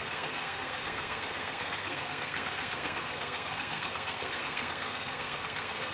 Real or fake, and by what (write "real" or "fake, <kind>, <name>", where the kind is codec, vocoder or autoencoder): fake, codec, SNAC